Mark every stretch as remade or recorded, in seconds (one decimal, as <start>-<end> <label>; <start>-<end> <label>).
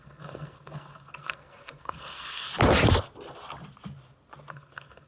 0.0-2.5 remade; 2.5-4.5 recorded; 4.5-5.1 remade